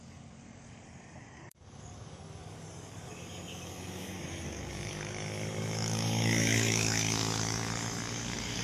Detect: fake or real fake